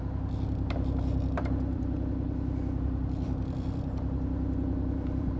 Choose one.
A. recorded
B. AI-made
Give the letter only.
B